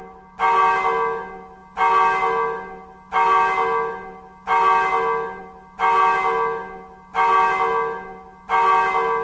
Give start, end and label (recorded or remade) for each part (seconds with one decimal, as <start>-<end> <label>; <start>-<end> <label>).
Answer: 0.0-9.2 recorded